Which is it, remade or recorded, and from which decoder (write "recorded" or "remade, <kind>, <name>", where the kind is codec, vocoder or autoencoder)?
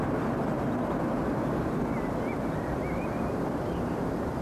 recorded